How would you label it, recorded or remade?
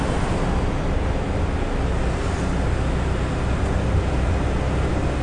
recorded